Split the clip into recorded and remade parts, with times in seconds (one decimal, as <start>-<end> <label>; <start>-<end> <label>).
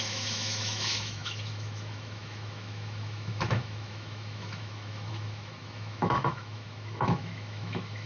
0.0-8.1 remade